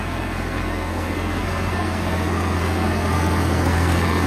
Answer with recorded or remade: remade